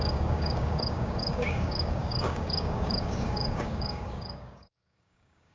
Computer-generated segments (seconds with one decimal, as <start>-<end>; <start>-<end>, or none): 0.0-5.5